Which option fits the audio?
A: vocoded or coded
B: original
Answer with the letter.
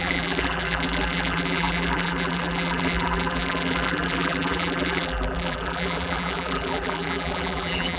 A